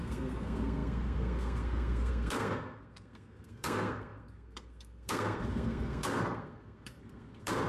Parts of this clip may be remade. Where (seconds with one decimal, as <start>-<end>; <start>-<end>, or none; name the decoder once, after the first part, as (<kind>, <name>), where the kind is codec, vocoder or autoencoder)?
0.0-7.7 (codec, SNAC)